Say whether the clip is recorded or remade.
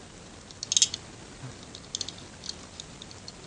recorded